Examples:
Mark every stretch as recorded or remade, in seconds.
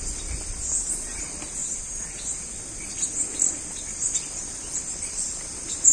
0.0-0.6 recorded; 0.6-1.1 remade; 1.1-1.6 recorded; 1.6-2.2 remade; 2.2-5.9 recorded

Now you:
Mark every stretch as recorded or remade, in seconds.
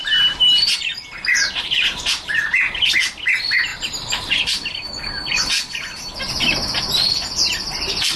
0.0-2.8 remade; 2.8-3.7 recorded; 3.7-4.4 remade; 4.4-8.2 recorded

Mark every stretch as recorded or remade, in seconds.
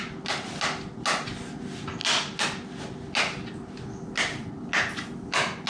0.0-5.7 recorded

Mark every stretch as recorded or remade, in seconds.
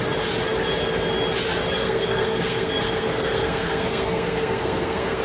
0.0-1.8 recorded; 1.8-5.2 remade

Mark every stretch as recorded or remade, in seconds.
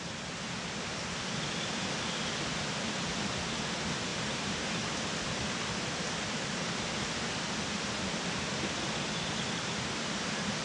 0.0-4.1 recorded; 4.1-4.7 remade; 4.7-10.6 recorded